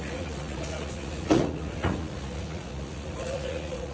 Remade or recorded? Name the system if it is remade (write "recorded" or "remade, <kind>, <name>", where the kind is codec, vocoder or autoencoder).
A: remade, vocoder, Vocos